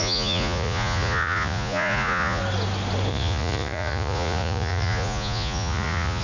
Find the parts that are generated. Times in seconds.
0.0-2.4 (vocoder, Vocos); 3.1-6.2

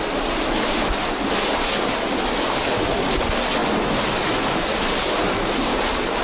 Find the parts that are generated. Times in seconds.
none